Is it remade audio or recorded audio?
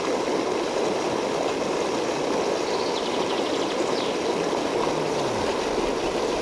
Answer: recorded